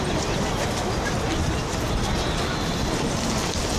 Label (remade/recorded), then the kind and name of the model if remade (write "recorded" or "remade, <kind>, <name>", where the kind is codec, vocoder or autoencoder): recorded